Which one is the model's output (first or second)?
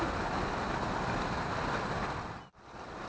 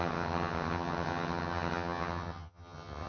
second